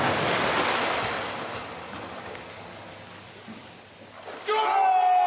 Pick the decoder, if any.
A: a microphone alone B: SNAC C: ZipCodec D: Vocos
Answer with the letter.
A